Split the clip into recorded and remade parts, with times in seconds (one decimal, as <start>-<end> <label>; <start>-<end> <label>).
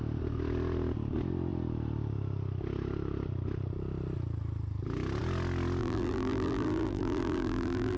0.0-5.8 recorded; 5.8-8.0 remade